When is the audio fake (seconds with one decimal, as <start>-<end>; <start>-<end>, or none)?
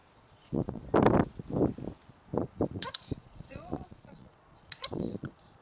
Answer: 0.0-0.8; 2.3-5.6